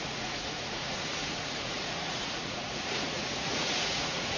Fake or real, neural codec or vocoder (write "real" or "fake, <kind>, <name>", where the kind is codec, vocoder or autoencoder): fake, vocoder, Vocos